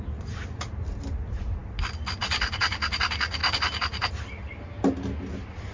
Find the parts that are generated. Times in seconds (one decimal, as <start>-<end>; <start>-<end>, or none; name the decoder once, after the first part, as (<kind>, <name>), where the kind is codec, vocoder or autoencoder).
none